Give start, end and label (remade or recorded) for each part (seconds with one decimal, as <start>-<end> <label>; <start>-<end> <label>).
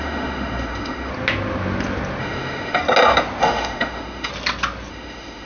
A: 0.0-1.1 remade; 1.1-2.2 recorded; 2.2-2.8 remade; 2.8-3.4 recorded; 3.4-4.3 remade; 4.3-4.9 recorded; 4.9-5.5 remade